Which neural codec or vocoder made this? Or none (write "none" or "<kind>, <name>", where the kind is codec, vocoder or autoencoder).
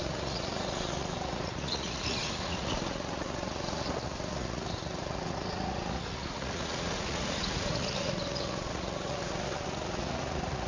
vocoder, Vocos